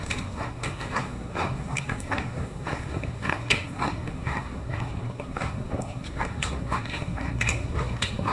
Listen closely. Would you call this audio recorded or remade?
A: remade